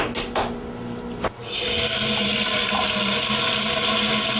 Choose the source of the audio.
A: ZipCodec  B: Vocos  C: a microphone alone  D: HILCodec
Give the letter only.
C